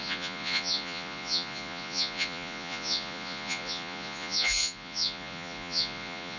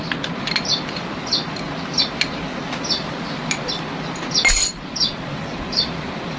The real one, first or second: second